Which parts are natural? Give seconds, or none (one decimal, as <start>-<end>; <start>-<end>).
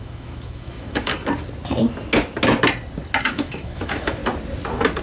1.1-3.2; 4.2-5.0